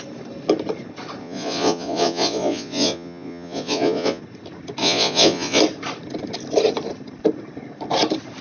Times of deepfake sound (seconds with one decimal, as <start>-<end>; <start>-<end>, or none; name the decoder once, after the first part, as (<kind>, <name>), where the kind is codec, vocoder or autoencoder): 1.2-4.2 (vocoder, Vocos); 4.8-5.6